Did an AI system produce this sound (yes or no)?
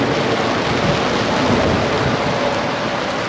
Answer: no